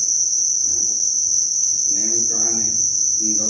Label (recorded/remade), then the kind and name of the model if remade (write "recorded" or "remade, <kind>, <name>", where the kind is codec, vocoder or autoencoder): recorded